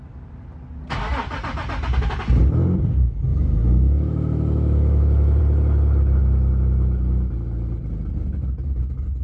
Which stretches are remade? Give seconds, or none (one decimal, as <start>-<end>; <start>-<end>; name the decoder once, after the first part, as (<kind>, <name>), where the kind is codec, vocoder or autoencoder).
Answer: 3.3-5.4 (autoencoder, DAC-VAE)